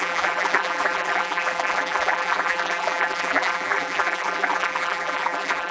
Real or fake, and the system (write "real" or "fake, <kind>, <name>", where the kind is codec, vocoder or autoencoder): fake, vocoder, BigVGAN v2